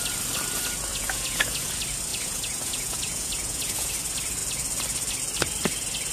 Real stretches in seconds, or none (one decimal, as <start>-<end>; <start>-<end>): 0.0-0.9; 1.7-2.1; 3.9-6.1